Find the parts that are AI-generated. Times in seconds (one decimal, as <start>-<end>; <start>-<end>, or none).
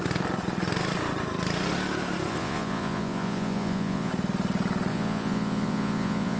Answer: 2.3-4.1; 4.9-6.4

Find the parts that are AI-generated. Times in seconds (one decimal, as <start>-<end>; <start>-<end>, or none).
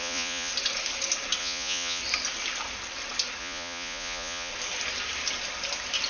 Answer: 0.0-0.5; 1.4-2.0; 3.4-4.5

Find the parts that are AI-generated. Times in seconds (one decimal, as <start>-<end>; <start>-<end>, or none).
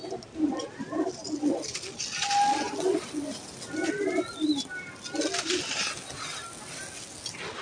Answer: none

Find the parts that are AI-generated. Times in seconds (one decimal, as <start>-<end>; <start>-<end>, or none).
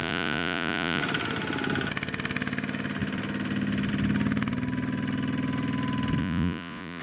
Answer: 0.0-1.0; 6.2-7.0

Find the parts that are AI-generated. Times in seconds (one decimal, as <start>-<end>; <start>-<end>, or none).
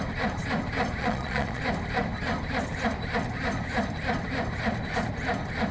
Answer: 1.0-1.6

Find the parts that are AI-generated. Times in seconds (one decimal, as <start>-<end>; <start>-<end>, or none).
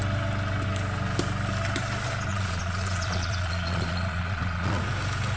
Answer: 2.3-4.8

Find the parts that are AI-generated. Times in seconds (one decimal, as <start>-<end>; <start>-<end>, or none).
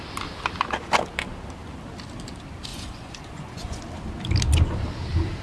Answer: 2.7-3.8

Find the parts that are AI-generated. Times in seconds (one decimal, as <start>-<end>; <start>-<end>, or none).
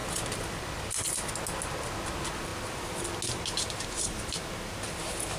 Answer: none